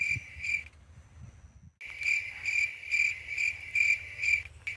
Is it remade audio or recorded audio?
recorded